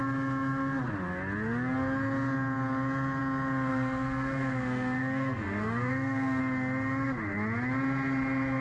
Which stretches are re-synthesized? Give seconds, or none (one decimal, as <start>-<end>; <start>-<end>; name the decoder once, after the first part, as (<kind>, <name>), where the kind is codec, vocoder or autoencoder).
3.7-6.4 (codec, SNAC)